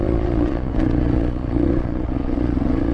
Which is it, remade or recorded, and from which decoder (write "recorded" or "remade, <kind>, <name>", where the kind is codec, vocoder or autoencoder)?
remade, vocoder, Vocos